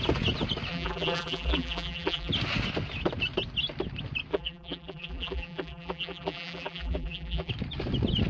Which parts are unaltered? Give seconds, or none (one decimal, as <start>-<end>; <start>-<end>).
0.0-0.7; 2.3-4.3; 7.5-8.3